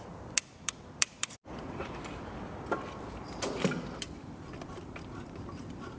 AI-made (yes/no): yes